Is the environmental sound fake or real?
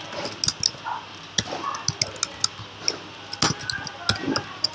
real